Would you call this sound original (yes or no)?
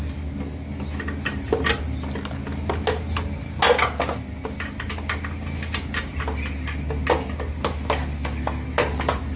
yes